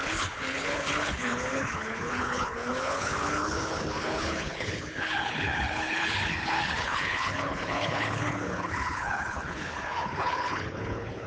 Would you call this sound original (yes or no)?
no